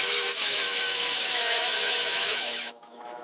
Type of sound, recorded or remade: remade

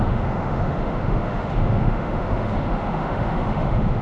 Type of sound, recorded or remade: remade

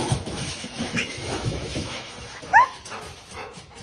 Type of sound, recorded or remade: remade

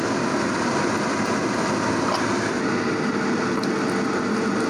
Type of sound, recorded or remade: recorded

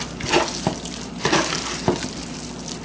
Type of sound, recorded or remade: recorded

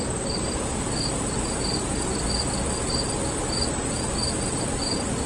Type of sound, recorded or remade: recorded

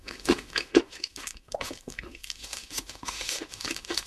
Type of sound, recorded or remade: remade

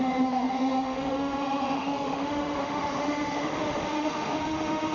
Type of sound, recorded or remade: remade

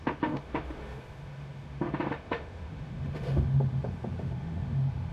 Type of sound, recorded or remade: remade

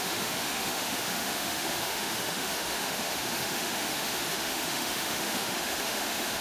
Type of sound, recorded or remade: remade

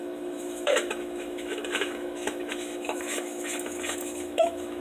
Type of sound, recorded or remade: remade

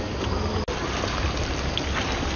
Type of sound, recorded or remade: recorded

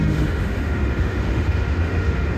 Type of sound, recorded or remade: remade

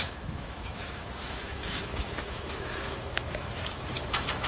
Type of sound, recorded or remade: remade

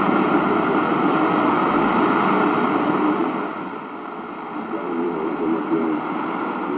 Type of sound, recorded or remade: recorded